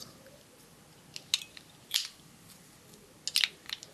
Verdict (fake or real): real